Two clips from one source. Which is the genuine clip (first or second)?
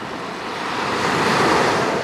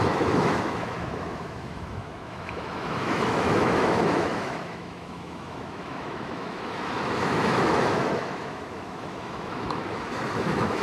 first